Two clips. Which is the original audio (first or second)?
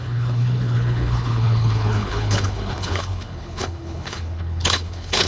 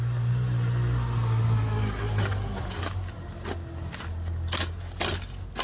second